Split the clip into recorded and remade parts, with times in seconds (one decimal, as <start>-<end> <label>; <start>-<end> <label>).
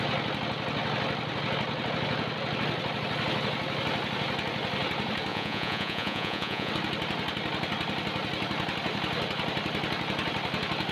0.0-5.3 recorded; 5.3-6.7 remade; 6.7-10.9 recorded